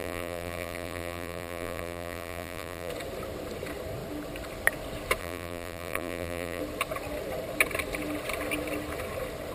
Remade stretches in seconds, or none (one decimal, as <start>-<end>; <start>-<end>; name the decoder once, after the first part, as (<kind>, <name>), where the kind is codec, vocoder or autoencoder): 0.0-2.9 (vocoder, BigVGAN v2); 5.2-6.6